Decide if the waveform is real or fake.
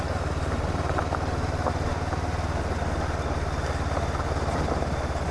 real